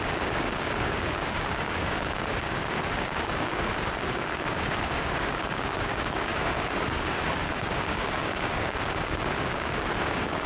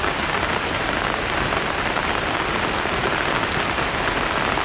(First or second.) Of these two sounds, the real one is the second